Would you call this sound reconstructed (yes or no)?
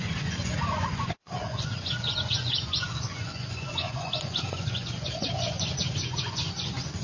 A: yes